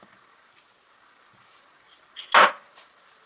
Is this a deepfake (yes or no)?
no